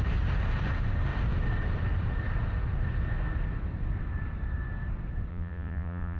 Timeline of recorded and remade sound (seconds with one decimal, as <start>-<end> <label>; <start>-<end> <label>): 0.0-5.3 recorded; 5.3-6.2 remade